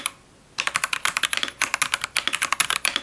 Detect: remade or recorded recorded